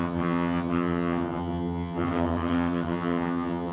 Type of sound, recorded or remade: remade